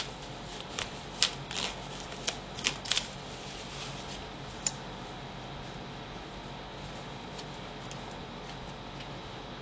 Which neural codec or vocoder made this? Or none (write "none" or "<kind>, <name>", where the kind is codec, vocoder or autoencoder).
none